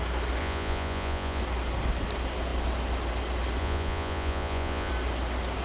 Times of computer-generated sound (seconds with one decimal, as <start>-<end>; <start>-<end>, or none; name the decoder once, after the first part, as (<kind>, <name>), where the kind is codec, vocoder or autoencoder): 0.4-1.4 (vocoder, Vocos); 3.6-4.9